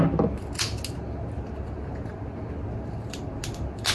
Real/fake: real